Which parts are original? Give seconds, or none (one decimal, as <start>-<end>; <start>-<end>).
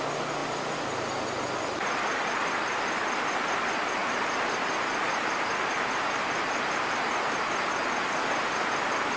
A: 0.0-4.0; 8.2-9.2